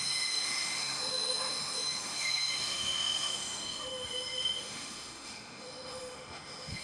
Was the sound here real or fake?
fake